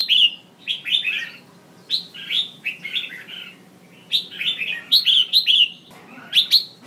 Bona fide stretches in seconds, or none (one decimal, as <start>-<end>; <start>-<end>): 0.0-6.9